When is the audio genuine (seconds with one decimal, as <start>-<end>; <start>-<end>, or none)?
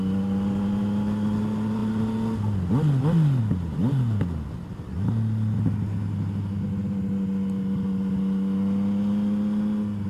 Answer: 0.0-10.1